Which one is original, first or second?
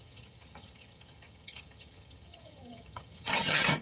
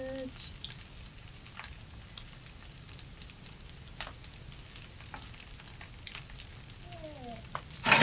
second